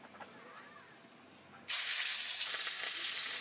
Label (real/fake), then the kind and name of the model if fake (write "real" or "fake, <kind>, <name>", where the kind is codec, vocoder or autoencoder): real